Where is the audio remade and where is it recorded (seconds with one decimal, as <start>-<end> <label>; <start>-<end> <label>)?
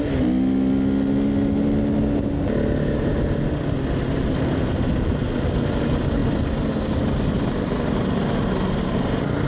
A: 0.0-9.5 recorded